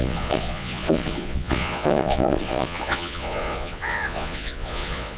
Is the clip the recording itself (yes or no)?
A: no